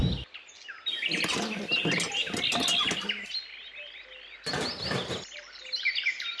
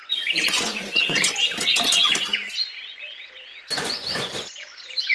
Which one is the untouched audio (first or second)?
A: first